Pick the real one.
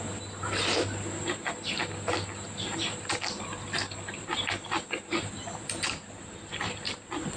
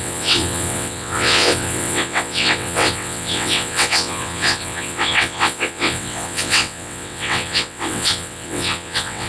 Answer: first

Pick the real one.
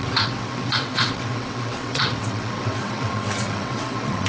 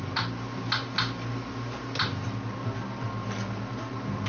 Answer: second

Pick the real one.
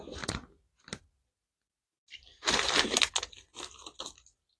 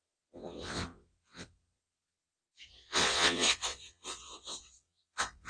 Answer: first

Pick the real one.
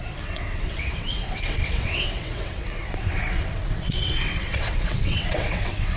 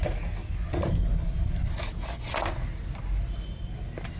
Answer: second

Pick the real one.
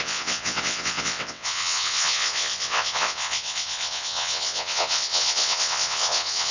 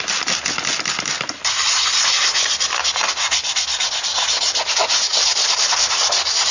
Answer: second